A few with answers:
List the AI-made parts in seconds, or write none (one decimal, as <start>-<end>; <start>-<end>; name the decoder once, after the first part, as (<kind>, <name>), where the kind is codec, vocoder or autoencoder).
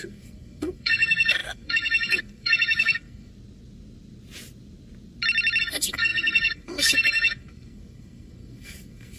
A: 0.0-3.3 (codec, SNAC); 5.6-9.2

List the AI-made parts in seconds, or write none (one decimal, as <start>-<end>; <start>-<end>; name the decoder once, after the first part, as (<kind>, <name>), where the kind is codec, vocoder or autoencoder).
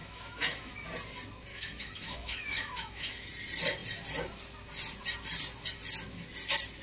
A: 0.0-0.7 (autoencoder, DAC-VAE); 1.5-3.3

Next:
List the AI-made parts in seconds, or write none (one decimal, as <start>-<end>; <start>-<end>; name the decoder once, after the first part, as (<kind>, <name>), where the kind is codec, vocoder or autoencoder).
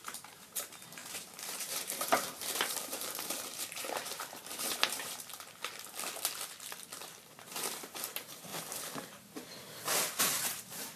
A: 0.0-5.3 (vocoder, BigVGAN v2); 7.4-8.5; 10.2-11.0